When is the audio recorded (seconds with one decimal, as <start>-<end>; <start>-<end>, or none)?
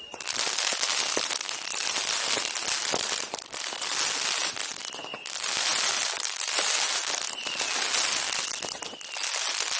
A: 0.0-9.8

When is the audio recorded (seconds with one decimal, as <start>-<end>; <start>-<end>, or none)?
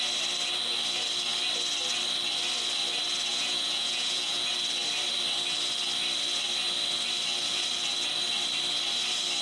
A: 0.0-3.3; 4.5-9.4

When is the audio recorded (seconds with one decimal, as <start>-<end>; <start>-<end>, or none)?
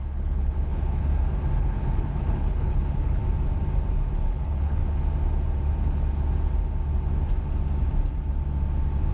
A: 1.1-1.6; 3.2-4.2; 4.8-9.1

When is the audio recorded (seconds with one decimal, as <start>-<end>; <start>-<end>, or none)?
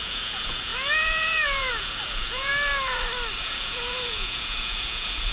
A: 2.5-3.4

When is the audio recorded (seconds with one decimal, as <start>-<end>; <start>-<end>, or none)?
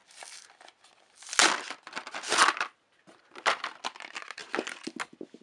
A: 0.0-5.4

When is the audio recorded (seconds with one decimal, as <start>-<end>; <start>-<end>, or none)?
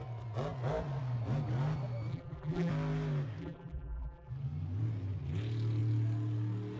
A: 0.0-2.1; 2.7-3.4; 4.3-6.8